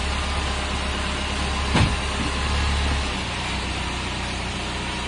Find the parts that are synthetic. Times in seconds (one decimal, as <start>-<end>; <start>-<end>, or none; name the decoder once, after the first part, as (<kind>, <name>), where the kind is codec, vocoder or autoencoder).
none